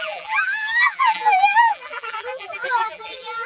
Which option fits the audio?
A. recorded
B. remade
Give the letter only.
B